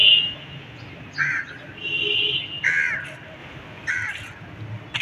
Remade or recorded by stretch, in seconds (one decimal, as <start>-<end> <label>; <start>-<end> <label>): 0.0-5.0 recorded